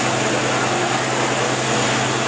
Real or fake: real